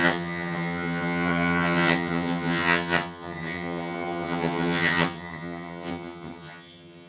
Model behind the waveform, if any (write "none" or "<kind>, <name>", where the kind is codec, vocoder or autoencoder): vocoder, HiFi-GAN